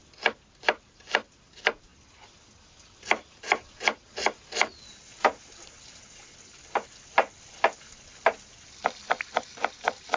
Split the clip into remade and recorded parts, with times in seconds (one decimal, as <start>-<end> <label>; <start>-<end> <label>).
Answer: 0.0-10.2 recorded

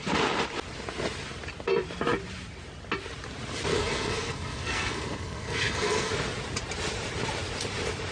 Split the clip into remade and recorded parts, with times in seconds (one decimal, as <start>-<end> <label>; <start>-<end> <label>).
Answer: 0.0-3.7 recorded; 3.7-6.1 remade; 6.1-8.1 recorded

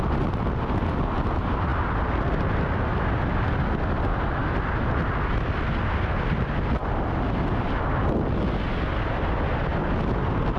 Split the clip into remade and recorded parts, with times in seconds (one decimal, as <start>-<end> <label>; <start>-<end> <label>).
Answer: 0.0-10.6 recorded

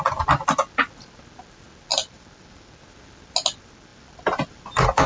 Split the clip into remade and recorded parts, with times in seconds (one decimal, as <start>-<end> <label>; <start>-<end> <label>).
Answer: 0.0-1.9 recorded; 1.9-2.7 remade; 2.7-3.9 recorded; 3.9-5.1 remade

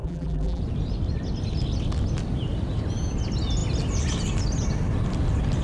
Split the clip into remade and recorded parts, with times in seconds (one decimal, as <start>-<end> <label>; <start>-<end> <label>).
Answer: 0.0-0.6 remade; 0.6-5.6 recorded

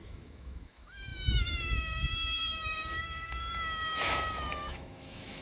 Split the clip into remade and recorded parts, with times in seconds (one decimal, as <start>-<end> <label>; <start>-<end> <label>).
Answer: 0.0-5.4 remade

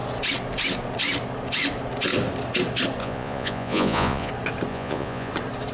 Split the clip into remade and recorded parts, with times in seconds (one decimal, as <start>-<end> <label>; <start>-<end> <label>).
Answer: 0.0-3.0 recorded; 3.0-4.3 remade; 4.3-4.7 recorded; 4.7-5.3 remade; 5.3-5.7 recorded